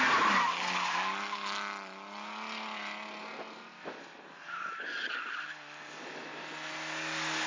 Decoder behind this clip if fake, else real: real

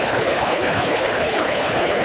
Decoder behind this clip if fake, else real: fake, codec, HILCodec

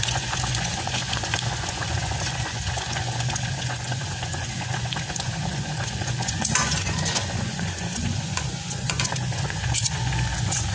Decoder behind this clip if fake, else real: fake, vocoder, Vocos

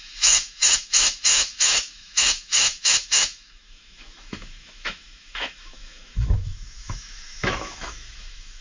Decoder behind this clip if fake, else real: fake, autoencoder, DAC-VAE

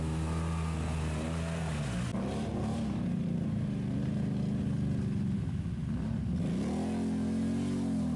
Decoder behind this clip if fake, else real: real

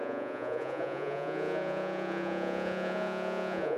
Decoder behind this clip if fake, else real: fake, vocoder, Vocos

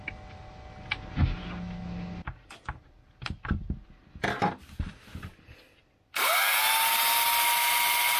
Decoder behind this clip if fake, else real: real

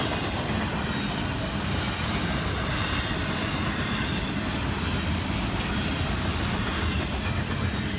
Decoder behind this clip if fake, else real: real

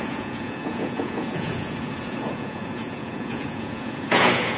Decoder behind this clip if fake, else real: fake, vocoder, Vocos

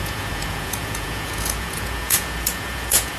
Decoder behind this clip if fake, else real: fake, vocoder, Vocos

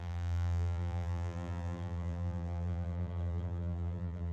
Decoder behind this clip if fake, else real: fake, vocoder, BigVGAN v2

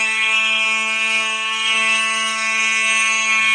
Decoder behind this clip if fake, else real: fake, codec, SNAC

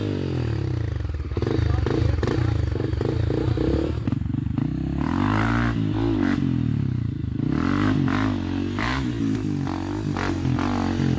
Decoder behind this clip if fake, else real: real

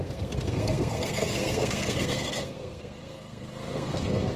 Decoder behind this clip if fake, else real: fake, codec, SNAC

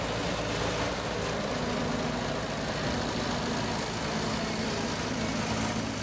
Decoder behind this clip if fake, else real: real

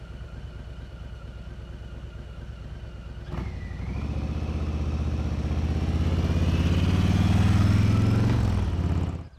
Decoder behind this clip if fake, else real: real